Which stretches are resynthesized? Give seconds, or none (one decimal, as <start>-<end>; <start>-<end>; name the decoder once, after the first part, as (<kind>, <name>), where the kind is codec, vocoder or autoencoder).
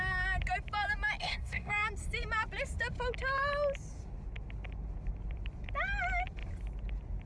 1.2-1.7 (codec, SNAC)